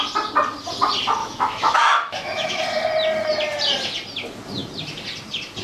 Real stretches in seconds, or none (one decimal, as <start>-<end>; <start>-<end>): 0.0-1.2; 2.6-5.6